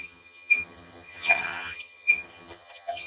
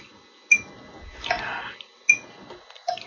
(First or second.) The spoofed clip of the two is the first